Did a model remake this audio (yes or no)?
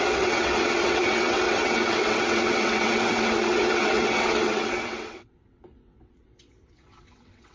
yes